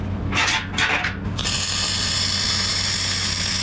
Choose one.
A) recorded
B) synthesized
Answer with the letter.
A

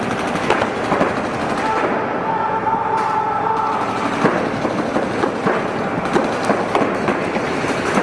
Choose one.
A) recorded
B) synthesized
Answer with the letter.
A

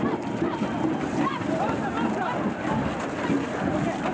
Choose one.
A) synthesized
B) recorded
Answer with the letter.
B